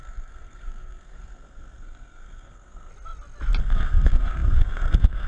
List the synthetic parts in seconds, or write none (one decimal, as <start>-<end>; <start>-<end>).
0.0-2.9; 3.6-5.3